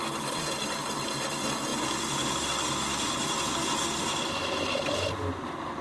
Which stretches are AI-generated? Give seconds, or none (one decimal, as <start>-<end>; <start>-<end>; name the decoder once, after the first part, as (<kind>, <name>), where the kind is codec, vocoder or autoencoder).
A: none